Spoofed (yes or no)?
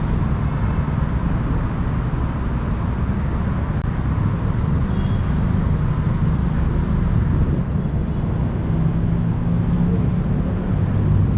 no